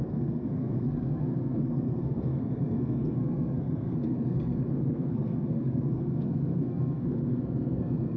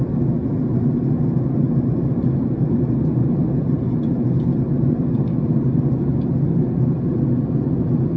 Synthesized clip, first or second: first